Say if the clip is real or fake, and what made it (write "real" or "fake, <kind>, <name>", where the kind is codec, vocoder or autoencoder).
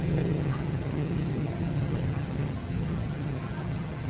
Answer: fake, vocoder, HiFi-GAN